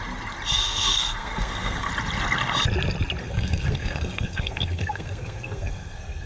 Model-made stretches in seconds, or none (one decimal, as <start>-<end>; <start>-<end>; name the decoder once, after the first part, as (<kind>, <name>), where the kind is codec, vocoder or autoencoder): 0.5-1.9 (codec, SNAC); 3.2-6.3